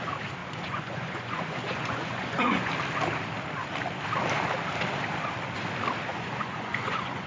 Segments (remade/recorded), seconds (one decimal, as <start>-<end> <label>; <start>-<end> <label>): 0.0-0.4 recorded; 0.4-2.7 remade; 2.7-6.1 recorded; 6.1-7.3 remade